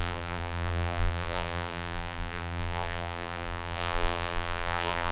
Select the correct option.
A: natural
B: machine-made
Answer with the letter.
B